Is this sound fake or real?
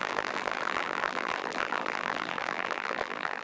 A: fake